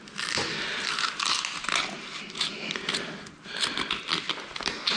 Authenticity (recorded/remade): recorded